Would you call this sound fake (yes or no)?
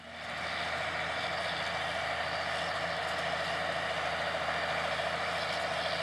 no